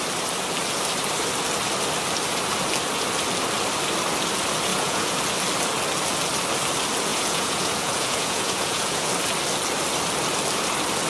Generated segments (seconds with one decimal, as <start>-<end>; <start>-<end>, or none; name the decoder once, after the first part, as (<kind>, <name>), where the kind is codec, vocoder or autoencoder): 4.7-5.2 (vocoder, Vocos); 7.1-9.1